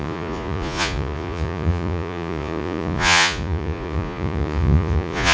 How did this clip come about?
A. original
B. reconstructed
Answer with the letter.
B